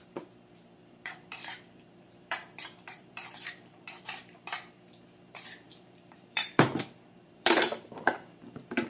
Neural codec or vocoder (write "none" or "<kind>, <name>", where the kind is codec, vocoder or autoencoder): vocoder, BigVGAN v2